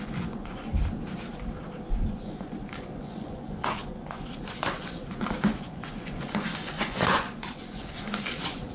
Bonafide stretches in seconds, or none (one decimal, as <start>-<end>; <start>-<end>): 0.7-2.1